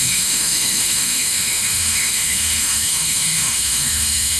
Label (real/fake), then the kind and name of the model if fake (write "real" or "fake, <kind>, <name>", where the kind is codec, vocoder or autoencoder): fake, autoencoder, DAC-VAE